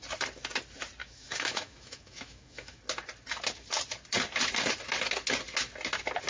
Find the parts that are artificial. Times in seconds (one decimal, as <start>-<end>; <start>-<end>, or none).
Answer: 1.0-2.8